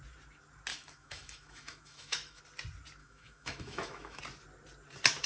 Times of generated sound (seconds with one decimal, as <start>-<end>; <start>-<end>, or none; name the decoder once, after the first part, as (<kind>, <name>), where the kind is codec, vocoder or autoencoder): 0.7-2.4 (autoencoder, DAC-VAE); 3.0-4.2